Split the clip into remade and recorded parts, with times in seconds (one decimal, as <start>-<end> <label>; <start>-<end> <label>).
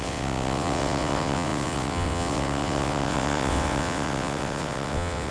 0.0-5.3 remade